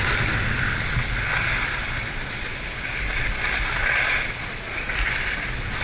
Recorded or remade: recorded